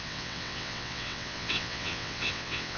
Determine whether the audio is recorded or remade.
remade